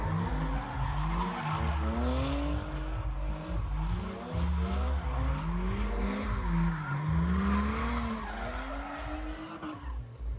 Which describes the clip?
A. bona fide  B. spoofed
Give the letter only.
A